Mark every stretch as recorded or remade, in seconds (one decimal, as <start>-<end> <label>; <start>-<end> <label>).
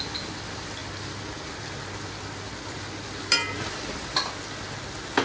0.0-5.2 recorded